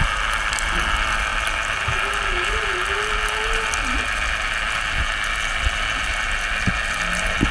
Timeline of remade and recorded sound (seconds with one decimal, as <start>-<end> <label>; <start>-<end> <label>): 0.0-7.5 recorded